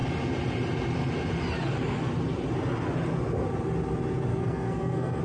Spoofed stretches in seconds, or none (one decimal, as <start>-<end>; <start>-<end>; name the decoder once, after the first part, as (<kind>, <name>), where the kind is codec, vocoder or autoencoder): 4.3-5.2 (codec, SNAC)